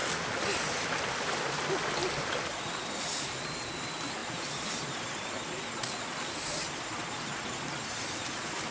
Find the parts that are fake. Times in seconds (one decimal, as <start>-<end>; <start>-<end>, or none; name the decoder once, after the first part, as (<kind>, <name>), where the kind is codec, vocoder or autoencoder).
none